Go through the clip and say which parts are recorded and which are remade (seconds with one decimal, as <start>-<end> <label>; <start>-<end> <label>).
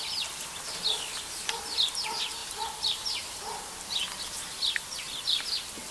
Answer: 0.0-2.4 recorded; 2.4-5.0 remade; 5.0-5.9 recorded